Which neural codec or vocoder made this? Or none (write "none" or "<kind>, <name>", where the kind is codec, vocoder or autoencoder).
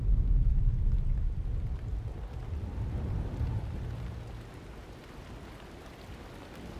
none